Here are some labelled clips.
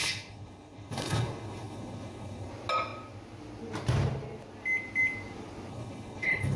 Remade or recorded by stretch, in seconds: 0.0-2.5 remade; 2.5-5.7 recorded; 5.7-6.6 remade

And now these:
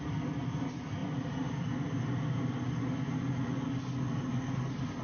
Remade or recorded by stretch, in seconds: 0.0-5.0 recorded

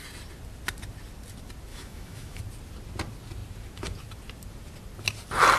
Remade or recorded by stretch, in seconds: 0.0-1.7 recorded; 1.7-2.4 remade; 2.4-5.6 recorded

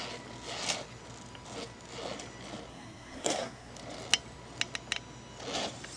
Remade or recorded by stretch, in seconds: 0.0-2.7 recorded; 2.7-3.7 remade; 3.7-6.0 recorded

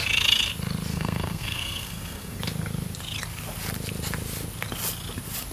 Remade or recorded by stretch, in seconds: 0.0-0.9 recorded; 0.9-2.4 remade; 2.4-5.5 recorded

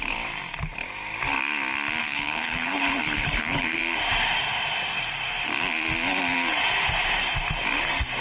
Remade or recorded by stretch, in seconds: 0.0-2.0 recorded; 2.0-3.8 remade; 3.8-8.2 recorded

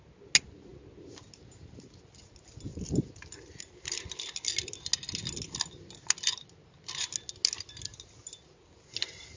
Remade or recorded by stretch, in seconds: 0.0-2.7 recorded; 2.7-3.6 remade; 3.6-9.4 recorded